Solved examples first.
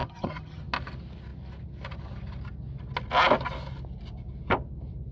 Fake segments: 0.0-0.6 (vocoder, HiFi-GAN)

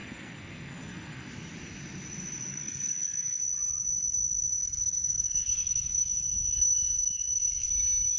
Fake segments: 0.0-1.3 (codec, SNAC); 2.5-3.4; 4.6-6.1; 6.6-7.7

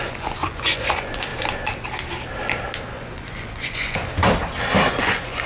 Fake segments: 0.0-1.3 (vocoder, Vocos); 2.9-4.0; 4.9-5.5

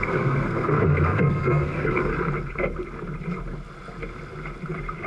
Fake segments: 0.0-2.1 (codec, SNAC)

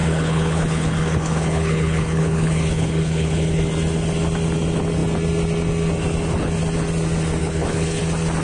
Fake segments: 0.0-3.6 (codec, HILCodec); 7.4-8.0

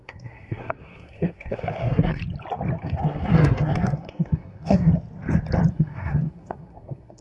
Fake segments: 0.0-2.2 (codec, SNAC); 2.8-4.9; 5.7-7.2

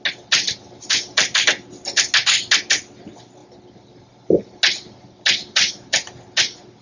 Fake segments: none

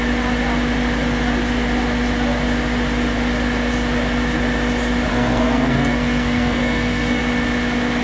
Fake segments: 5.1-7.2 (codec, SNAC)